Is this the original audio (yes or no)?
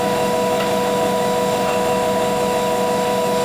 no